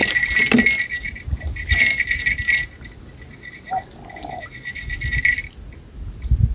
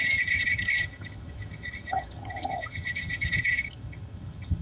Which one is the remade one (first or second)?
second